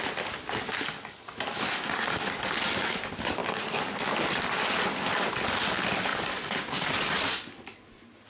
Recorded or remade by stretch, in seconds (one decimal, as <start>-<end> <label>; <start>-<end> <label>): 0.0-8.3 recorded